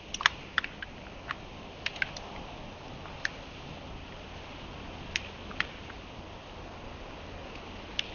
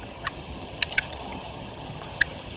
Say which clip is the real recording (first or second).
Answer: first